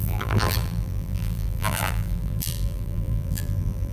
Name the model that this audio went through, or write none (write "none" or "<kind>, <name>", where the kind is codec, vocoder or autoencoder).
vocoder, BigVGAN v2